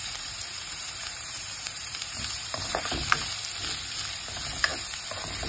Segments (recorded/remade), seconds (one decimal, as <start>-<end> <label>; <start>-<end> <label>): 0.0-3.3 remade; 3.3-5.5 recorded